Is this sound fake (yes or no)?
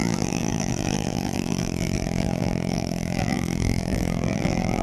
yes